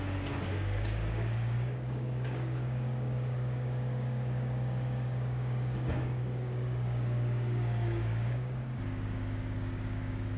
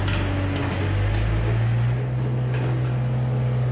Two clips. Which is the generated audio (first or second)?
first